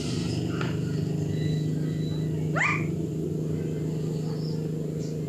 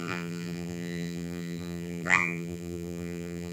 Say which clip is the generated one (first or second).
second